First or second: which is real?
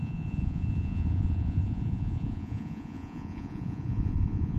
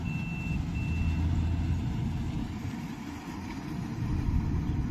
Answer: second